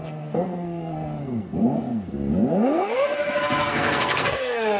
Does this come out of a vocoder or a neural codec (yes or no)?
yes